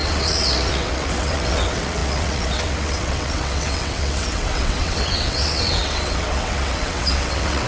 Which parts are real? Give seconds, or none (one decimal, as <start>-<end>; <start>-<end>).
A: none